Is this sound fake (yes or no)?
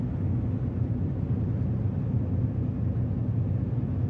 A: no